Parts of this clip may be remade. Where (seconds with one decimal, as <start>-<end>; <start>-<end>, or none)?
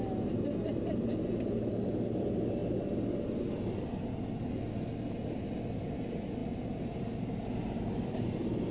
none